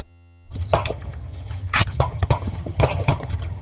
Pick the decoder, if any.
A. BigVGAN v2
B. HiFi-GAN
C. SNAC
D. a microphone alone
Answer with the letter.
B